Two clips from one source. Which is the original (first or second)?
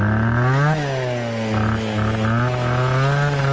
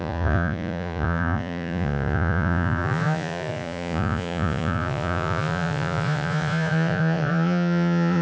first